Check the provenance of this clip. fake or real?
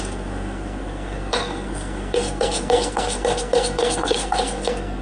fake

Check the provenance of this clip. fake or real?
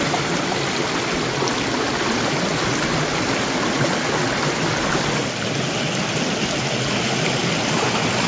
real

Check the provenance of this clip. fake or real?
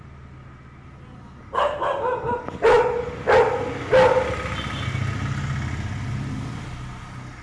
real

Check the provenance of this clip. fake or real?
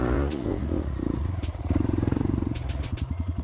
fake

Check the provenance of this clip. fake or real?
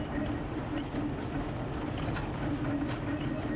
real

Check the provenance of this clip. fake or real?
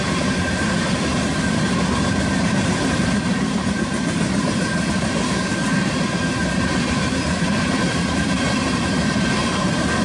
fake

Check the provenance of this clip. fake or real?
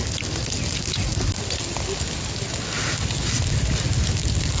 real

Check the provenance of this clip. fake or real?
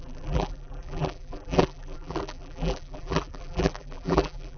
fake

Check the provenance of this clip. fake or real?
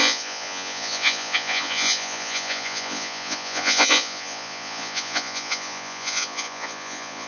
fake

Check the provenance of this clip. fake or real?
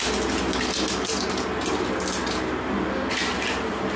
real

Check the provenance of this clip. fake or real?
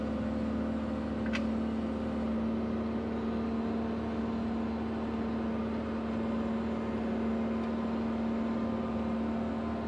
real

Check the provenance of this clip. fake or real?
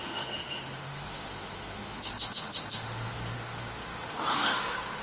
fake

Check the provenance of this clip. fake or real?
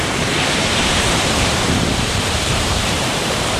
fake